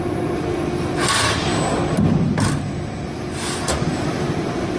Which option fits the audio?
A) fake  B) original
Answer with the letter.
B